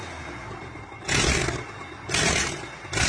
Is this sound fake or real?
real